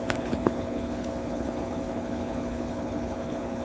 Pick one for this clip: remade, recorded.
remade